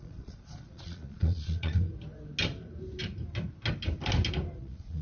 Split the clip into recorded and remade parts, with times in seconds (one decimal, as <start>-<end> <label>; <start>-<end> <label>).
0.0-1.9 remade; 1.9-4.6 recorded; 4.6-5.0 remade